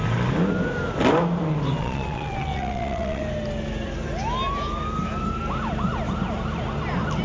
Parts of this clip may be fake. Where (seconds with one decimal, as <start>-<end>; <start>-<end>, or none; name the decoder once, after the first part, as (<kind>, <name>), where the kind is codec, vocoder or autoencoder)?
1.8-3.2 (vocoder, WaveNeXt)

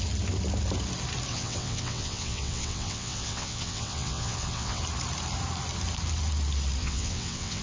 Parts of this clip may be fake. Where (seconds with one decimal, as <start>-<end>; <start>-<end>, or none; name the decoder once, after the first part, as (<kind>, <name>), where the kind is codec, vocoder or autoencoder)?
1.3-4.8 (vocoder, WaveNeXt); 6.8-7.6

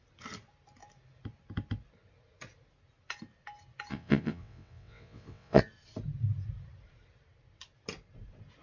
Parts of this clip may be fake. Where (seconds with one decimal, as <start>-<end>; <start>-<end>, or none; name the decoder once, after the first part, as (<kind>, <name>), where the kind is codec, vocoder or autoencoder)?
3.9-5.6 (vocoder, WaveNeXt)